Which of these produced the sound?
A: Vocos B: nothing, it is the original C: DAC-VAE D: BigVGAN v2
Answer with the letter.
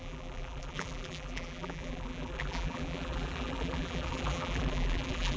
D